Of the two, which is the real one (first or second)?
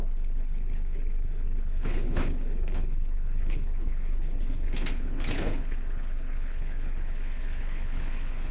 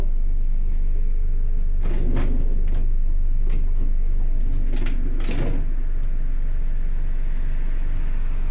second